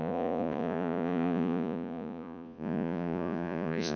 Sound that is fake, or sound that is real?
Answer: fake